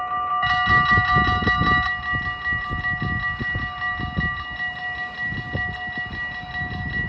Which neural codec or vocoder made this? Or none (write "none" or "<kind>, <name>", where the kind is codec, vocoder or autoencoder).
none